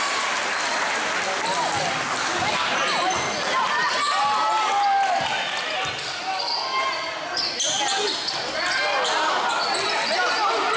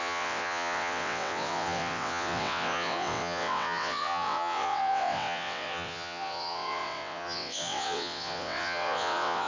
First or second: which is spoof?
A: second